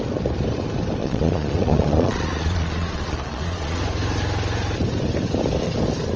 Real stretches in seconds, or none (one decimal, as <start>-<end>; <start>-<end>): 0.0-1.0; 3.8-6.2